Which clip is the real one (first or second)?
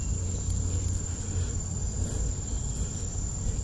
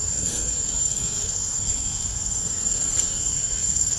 first